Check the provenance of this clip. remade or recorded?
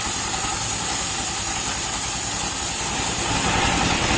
recorded